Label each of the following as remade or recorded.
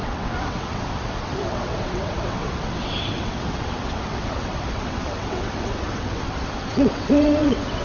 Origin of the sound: remade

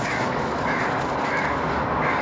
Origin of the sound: remade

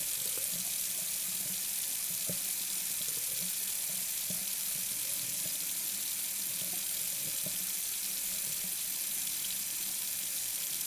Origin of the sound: recorded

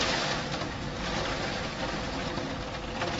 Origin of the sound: recorded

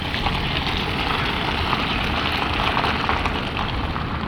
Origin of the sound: recorded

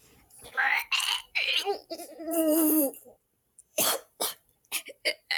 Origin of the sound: remade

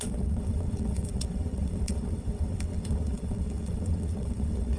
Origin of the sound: remade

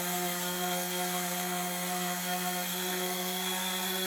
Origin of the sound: remade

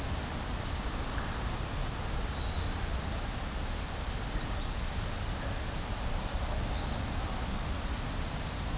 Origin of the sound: recorded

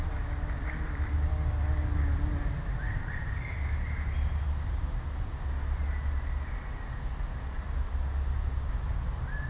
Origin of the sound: recorded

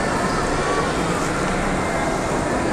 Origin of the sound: recorded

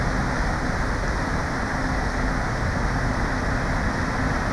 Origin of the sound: recorded